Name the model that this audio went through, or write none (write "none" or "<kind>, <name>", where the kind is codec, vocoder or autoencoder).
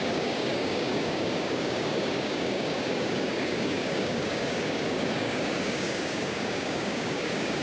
codec, DAC